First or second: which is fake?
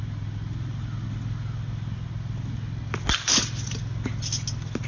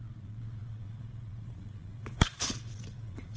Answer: second